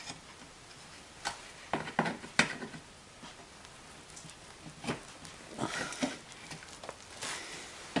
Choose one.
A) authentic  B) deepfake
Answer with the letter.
A